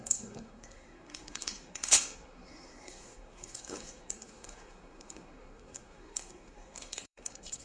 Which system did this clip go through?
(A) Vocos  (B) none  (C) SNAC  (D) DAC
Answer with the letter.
C